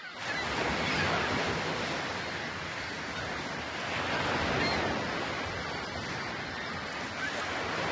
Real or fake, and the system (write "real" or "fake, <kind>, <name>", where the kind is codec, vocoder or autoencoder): real